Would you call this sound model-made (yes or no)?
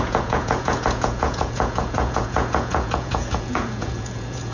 yes